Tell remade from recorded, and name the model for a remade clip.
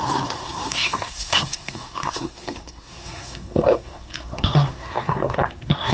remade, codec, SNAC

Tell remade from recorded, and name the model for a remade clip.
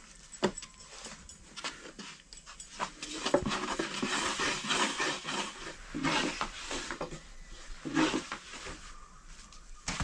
recorded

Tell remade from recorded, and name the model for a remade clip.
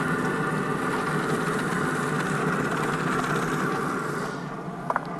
recorded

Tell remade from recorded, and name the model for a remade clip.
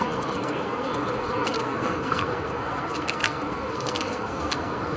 remade, codec, SNAC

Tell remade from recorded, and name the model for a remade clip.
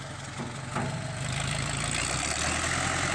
recorded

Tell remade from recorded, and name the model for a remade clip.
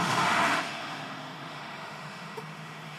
remade, autoencoder, DAC-VAE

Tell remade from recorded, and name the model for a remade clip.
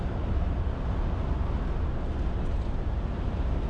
recorded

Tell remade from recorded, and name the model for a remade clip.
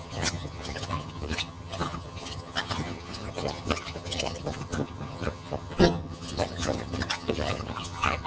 remade, vocoder, HiFi-GAN